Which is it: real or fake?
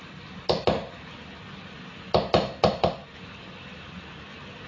real